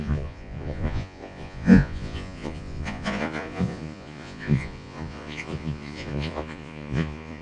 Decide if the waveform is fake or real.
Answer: fake